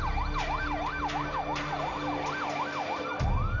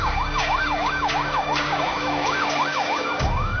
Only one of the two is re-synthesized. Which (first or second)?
second